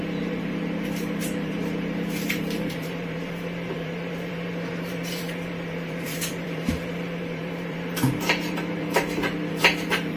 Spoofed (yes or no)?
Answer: yes